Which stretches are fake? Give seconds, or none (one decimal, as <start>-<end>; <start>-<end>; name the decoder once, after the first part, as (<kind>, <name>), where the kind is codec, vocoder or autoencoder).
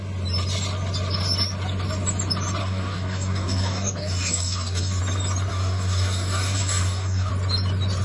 2.6-5.0 (codec, DAC); 5.5-7.3